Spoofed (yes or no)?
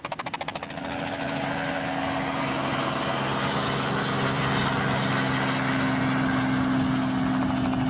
no